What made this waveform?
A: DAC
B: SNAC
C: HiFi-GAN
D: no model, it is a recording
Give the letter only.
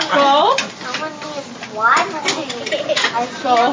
D